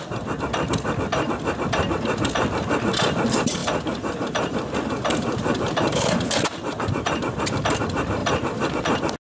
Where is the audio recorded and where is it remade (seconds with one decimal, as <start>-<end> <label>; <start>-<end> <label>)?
0.0-3.6 recorded; 3.6-7.8 remade; 7.8-8.2 recorded; 8.2-8.8 remade; 8.8-9.4 recorded